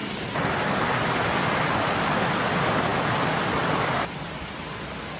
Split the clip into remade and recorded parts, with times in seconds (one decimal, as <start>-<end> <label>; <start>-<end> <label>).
0.0-0.9 remade; 0.9-5.2 recorded